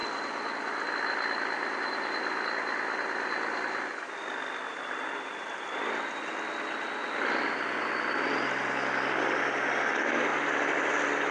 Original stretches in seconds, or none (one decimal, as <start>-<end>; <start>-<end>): 0.0-11.3